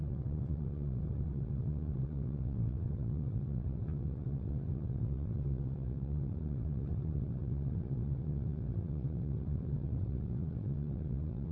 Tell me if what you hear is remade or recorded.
remade